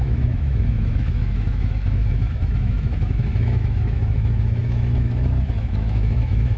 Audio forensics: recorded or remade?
remade